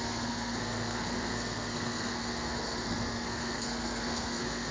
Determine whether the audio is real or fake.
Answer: fake